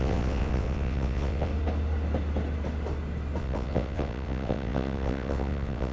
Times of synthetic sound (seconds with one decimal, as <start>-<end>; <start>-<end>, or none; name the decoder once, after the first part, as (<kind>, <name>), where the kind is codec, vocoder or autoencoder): 0.0-1.5 (vocoder, WaveNeXt); 3.4-5.9